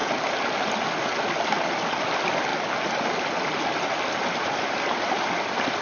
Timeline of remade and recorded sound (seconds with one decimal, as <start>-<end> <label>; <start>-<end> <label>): 0.0-5.8 recorded